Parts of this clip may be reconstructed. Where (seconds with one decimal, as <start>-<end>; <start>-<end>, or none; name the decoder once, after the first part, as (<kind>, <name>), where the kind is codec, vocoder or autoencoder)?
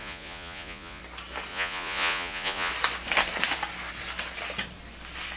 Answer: 0.0-1.0 (vocoder, Vocos); 1.5-2.7